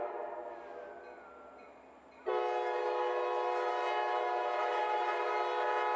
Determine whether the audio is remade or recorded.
recorded